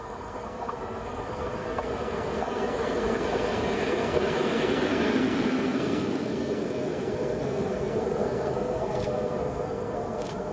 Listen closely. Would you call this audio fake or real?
fake